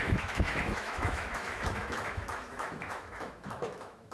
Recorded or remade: remade